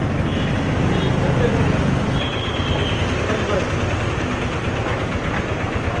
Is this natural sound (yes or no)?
yes